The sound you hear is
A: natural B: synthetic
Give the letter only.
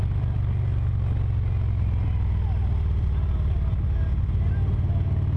A